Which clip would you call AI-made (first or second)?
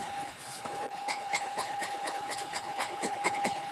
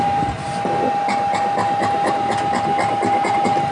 first